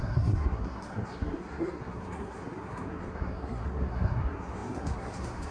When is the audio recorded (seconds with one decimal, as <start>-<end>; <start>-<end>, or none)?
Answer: none